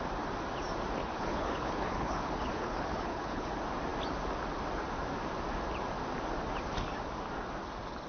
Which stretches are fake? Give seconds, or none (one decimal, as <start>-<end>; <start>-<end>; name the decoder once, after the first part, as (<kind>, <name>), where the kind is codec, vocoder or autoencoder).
1.0-3.5 (codec, HILCodec)